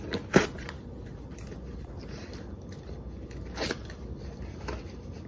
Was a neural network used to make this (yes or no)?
no